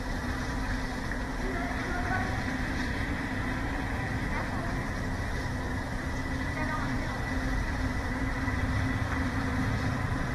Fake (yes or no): yes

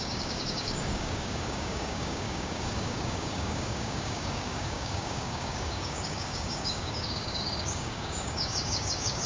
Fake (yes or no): yes